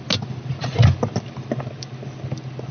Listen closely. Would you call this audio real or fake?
real